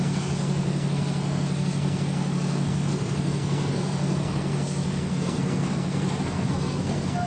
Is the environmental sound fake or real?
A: fake